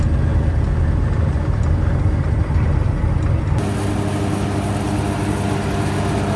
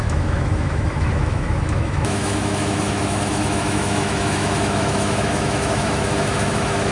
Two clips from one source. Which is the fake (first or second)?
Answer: second